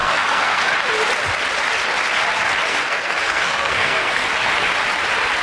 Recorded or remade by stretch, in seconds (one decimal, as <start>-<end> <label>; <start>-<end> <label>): 0.0-0.6 remade; 0.6-2.7 recorded; 2.7-4.3 remade; 4.3-5.4 recorded